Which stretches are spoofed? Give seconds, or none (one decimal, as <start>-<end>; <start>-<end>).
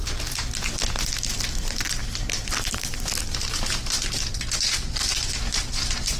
0.0-0.6; 2.0-2.9